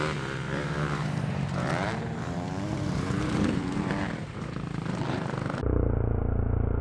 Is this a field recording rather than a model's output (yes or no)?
no